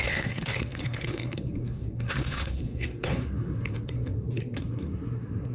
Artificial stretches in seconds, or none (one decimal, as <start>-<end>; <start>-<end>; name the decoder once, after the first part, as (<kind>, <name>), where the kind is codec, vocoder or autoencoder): 0.0-5.5 (codec, SNAC)